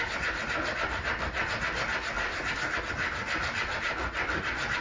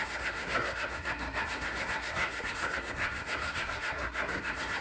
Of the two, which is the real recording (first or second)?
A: first